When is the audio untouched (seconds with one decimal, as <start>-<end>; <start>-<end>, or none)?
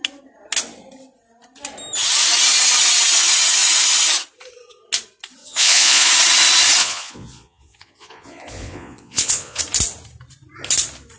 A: 0.0-5.4; 6.1-6.8; 9.6-11.2